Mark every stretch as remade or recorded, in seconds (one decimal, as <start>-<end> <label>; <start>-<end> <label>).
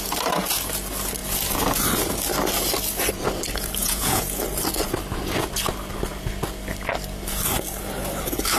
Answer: 0.0-3.8 recorded; 3.8-4.4 remade; 4.4-8.6 recorded